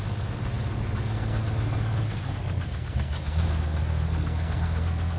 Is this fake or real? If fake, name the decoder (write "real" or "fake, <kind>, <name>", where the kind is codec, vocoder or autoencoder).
fake, codec, SNAC